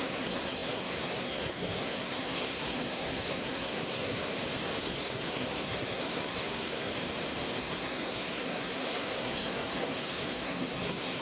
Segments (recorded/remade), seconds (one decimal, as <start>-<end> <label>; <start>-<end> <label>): 0.0-4.3 remade; 4.3-4.8 recorded; 4.8-6.9 remade; 6.9-7.6 recorded; 7.6-11.2 remade